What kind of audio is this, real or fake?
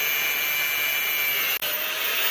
real